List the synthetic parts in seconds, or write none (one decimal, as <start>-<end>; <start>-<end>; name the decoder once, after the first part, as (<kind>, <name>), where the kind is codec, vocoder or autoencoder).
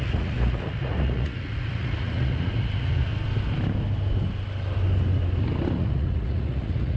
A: 0.0-3.1 (vocoder, Vocos); 5.7-7.0